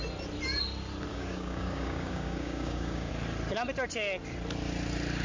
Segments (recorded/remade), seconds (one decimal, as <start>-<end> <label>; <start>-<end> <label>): 0.0-1.1 recorded; 1.1-3.1 remade; 3.1-5.2 recorded